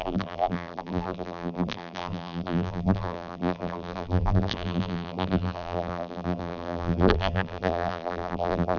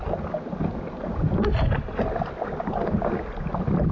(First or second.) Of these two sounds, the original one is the second